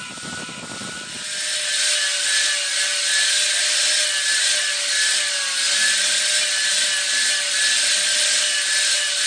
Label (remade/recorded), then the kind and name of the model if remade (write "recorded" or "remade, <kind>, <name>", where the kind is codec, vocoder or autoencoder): recorded